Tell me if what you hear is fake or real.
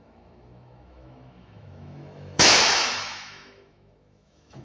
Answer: fake